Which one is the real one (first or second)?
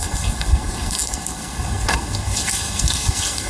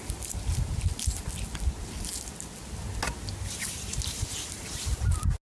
second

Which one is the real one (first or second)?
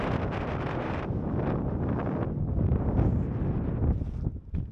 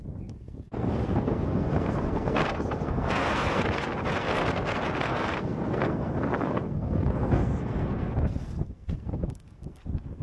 first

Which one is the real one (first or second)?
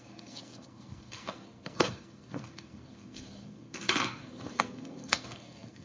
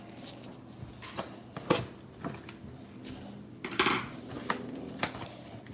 second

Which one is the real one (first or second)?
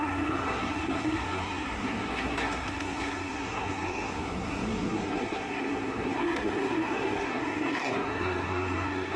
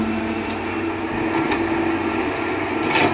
second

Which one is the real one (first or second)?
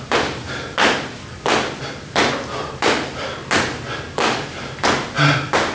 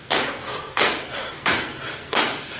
first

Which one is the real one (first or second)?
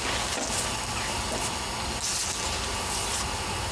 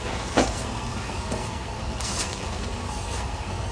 first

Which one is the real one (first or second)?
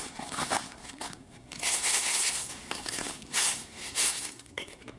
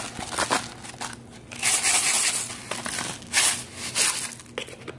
second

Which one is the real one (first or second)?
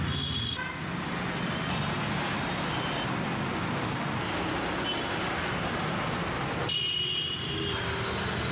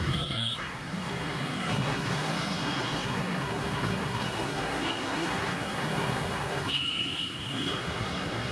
first